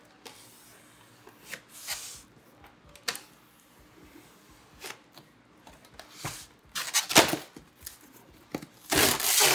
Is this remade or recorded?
recorded